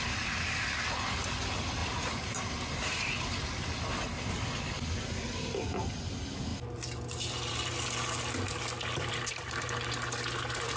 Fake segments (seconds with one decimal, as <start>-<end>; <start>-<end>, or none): 1.8-2.5